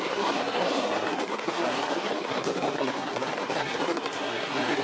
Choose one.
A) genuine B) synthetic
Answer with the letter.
B